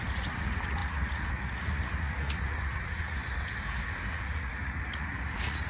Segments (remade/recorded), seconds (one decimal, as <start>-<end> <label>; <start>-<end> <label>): 0.0-3.2 remade; 3.2-4.1 recorded; 4.1-5.7 remade